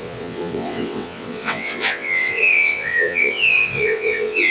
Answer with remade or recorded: remade